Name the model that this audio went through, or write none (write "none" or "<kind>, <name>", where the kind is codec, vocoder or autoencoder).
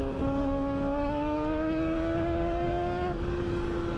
codec, DAC